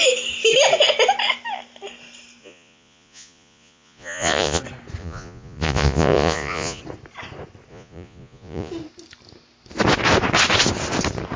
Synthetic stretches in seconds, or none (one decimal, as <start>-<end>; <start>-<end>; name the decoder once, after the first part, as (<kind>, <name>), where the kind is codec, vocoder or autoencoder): 2.4-4.6 (vocoder, Vocos); 5.0-6.8; 7.7-8.7